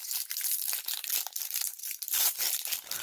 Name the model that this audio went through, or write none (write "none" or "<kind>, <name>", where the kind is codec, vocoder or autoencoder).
none